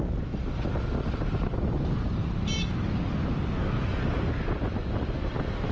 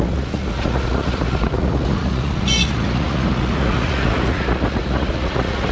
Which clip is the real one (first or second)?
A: first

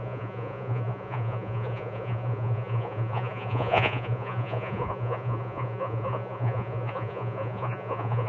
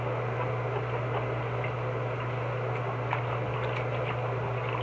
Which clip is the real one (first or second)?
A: second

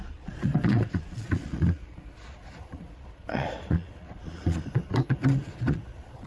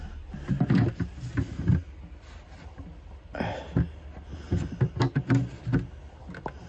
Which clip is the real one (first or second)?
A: second